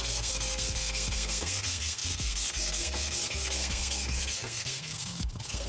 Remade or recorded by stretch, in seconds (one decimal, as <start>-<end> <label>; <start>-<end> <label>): 0.0-5.7 remade